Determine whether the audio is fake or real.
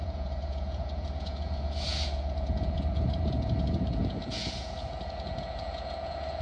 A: fake